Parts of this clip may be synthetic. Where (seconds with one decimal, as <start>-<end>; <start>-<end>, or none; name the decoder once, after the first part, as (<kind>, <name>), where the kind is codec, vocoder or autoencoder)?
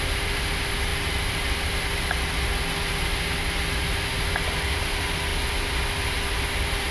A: none